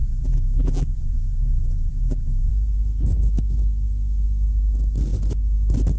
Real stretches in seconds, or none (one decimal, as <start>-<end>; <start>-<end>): 2.5-6.0